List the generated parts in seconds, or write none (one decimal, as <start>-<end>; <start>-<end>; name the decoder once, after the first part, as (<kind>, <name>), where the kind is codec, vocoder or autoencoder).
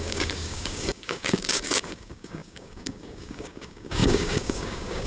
0.0-5.1 (codec, DAC)